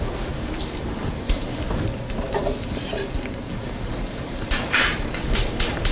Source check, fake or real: fake